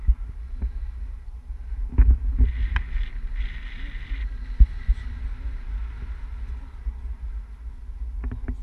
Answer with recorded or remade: recorded